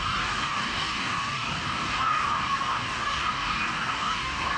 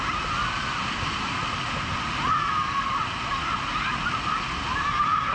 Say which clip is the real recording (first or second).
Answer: second